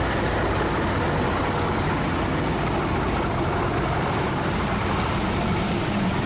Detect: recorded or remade recorded